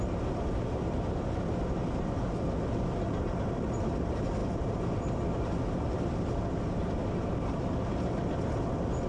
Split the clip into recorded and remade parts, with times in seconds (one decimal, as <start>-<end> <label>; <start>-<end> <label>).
0.0-9.1 recorded